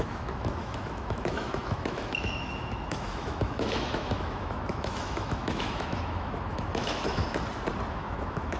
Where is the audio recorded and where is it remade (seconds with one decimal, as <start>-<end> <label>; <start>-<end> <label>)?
0.0-7.2 remade; 7.2-7.9 recorded; 7.9-8.6 remade

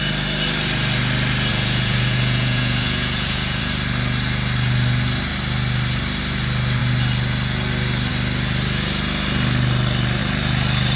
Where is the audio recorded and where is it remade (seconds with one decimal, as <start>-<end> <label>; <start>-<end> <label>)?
0.0-1.5 recorded; 1.5-3.6 remade; 3.6-11.0 recorded

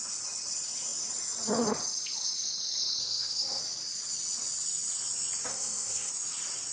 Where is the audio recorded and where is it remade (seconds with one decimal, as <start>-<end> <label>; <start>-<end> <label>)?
0.0-3.0 recorded; 3.0-3.6 remade; 3.6-5.5 recorded; 5.5-6.1 remade; 6.1-6.7 recorded

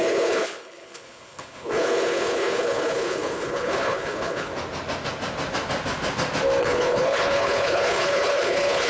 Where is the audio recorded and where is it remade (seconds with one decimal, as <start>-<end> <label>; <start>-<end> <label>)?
0.0-4.5 remade; 4.5-6.6 recorded; 6.6-8.9 remade

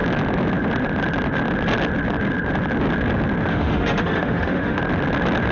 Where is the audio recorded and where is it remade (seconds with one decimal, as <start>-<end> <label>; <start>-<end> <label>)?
0.0-3.5 recorded; 3.5-4.8 remade; 4.8-5.5 recorded

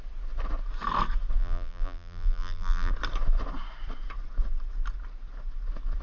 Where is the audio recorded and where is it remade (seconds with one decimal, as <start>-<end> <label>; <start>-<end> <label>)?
0.0-1.4 recorded; 1.4-2.9 remade; 2.9-6.0 recorded

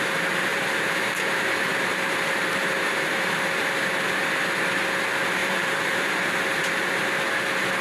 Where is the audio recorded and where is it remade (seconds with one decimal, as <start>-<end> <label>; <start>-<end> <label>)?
0.0-0.5 recorded; 0.5-1.2 remade; 1.2-1.7 recorded; 1.7-4.2 remade; 4.2-5.4 recorded; 5.4-6.3 remade; 6.3-7.8 recorded